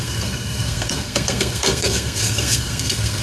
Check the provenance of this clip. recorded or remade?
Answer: remade